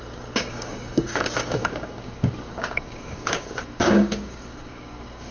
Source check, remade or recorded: remade